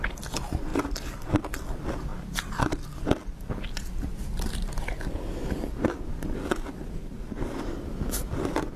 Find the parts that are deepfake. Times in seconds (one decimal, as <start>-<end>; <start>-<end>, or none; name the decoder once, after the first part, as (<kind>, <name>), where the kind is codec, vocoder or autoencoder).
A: 0.0-0.7 (vocoder, BigVGAN v2); 1.4-2.1; 3.0-8.8